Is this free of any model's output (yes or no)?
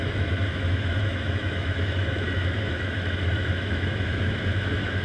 no